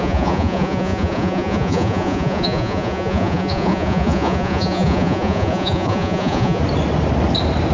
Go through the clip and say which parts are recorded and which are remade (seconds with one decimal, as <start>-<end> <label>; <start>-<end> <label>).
0.0-6.6 remade; 6.6-7.7 recorded